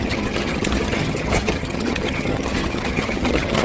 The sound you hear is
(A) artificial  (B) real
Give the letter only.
A